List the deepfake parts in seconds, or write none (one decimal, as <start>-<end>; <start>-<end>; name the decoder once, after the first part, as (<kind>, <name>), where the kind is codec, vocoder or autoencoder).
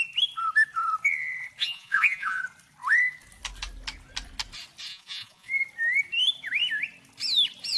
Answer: 1.6-2.4 (vocoder, Vocos); 4.9-5.5